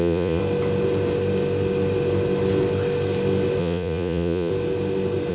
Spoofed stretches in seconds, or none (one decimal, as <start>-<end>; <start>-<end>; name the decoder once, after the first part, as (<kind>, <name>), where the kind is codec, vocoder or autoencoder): 0.0-0.4 (vocoder, Vocos); 3.6-4.5